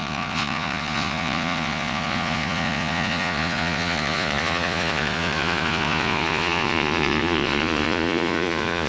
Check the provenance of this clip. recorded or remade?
remade